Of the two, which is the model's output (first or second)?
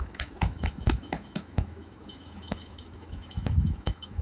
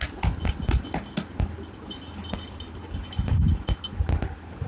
first